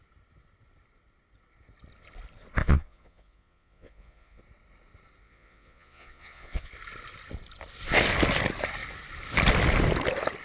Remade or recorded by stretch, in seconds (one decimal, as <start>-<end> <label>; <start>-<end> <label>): 0.0-2.6 recorded; 2.6-4.4 remade; 4.4-5.2 recorded; 5.2-6.7 remade; 6.7-10.4 recorded